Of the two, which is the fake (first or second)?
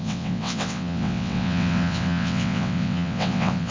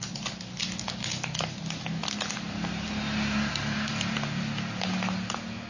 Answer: first